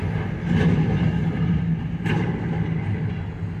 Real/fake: real